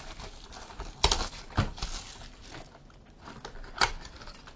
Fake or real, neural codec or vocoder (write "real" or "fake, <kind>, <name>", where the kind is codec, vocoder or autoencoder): real